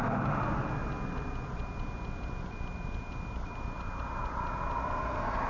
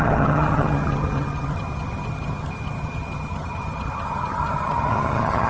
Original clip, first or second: first